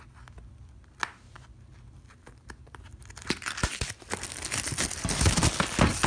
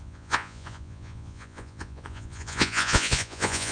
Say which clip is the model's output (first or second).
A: second